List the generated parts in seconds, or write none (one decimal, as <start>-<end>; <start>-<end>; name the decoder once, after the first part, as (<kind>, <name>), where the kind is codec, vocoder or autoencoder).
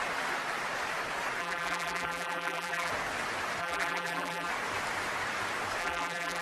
1.4-2.9 (vocoder, BigVGAN v2); 3.6-4.5; 5.8-6.4